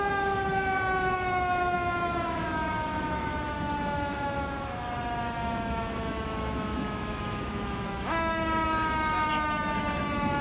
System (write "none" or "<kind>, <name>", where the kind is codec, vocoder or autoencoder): autoencoder, DAC-VAE